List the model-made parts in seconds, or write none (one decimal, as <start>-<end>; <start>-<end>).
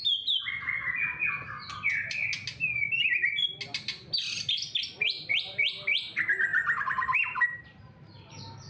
6.5-8.7